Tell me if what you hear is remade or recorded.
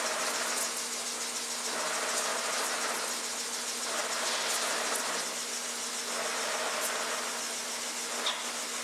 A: recorded